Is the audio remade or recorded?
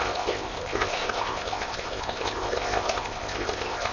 remade